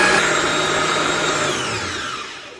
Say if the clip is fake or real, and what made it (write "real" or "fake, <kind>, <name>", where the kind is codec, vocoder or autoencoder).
real